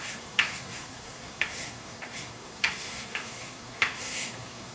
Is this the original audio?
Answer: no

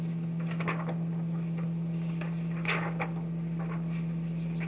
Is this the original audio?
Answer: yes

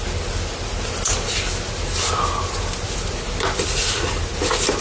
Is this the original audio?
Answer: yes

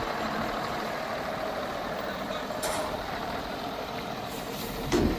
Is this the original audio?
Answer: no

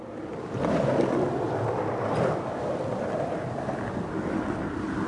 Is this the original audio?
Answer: yes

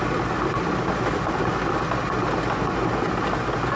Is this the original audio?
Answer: yes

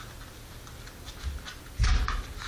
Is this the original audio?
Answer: yes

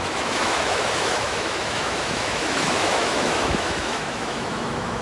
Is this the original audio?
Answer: no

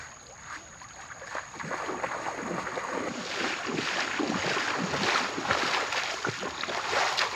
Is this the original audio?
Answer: yes